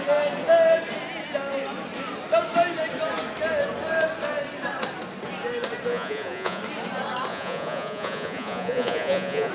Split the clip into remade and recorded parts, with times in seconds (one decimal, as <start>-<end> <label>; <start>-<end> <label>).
0.0-5.9 recorded; 5.9-6.6 remade; 6.6-7.3 recorded; 7.3-9.5 remade